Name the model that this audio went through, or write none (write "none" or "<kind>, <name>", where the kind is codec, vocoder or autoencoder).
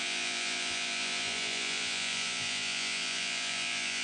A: vocoder, Vocos